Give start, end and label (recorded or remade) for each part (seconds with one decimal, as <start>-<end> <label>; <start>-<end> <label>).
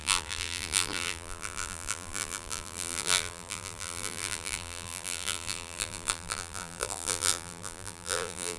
0.0-8.6 remade